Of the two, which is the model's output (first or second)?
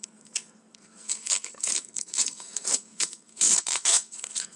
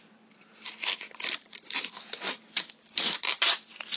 first